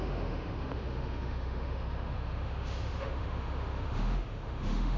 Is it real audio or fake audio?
fake